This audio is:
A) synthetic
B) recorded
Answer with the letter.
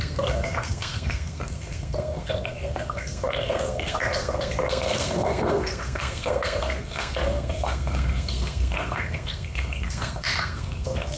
A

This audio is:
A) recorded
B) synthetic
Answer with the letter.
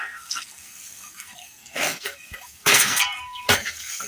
B